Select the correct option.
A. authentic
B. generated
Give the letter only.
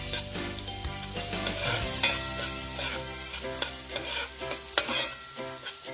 A